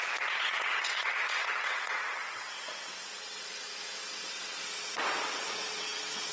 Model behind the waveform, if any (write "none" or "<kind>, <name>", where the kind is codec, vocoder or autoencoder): vocoder, WaveNeXt